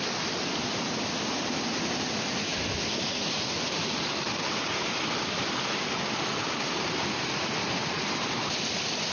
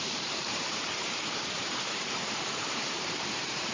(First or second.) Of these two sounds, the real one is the first